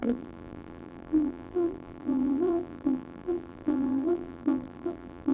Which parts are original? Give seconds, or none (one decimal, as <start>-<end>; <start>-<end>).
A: none